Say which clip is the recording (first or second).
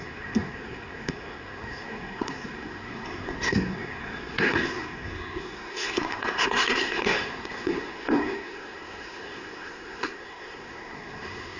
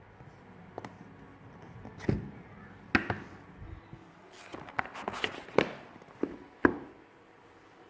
second